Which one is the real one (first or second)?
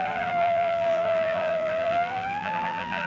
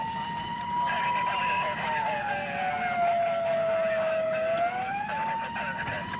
second